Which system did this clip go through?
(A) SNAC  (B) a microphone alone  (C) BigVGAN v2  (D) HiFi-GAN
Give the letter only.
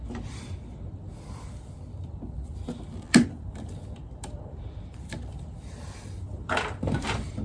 C